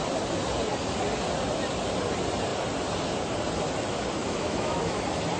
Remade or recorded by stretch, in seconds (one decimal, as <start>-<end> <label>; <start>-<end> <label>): 0.0-4.2 recorded; 4.2-5.0 remade; 5.0-5.4 recorded